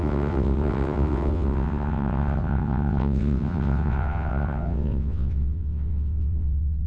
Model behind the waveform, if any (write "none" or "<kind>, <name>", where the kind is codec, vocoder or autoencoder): vocoder, WaveNeXt